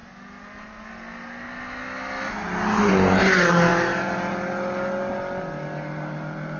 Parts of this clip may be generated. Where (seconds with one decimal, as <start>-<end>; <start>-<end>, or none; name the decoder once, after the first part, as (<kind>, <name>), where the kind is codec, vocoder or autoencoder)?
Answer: none